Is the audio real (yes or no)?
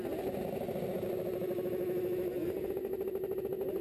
yes